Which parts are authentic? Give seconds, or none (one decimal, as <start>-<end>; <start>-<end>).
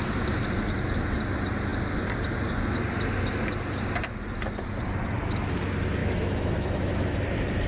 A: 0.0-6.0; 7.2-7.7